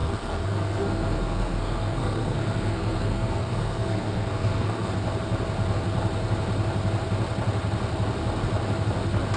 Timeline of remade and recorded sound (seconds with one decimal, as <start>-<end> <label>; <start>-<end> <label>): 0.0-4.9 remade; 4.9-9.4 recorded